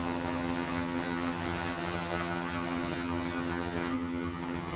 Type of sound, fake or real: fake